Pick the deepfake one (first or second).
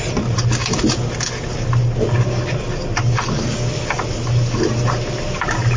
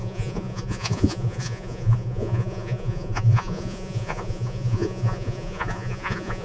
second